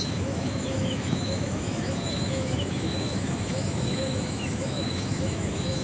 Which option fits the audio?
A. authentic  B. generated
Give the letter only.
B